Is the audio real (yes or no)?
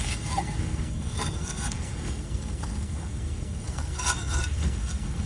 no